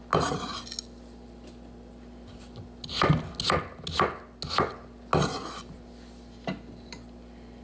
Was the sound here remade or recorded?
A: recorded